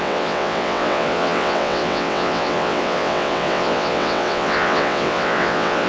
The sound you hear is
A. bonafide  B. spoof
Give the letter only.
B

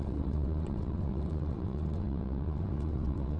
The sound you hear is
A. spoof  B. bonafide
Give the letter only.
A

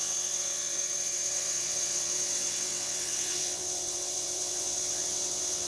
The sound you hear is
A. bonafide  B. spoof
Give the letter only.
B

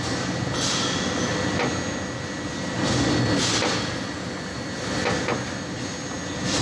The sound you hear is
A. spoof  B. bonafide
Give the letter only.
B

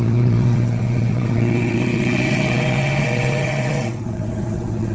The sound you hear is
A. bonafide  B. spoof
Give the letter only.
B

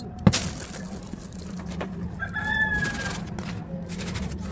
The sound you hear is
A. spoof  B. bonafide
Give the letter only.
B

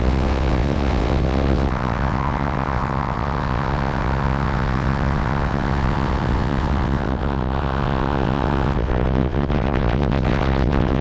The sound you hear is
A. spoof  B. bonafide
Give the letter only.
A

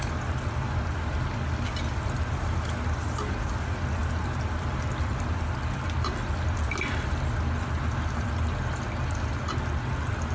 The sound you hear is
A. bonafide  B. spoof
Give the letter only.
A